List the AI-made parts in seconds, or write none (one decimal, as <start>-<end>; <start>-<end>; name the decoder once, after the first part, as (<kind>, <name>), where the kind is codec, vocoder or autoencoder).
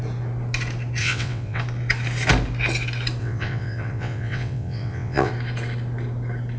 1.0-1.6 (vocoder, WaveNeXt); 3.2-5.3